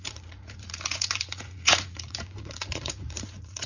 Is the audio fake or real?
fake